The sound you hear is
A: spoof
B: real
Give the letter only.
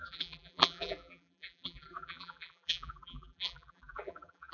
A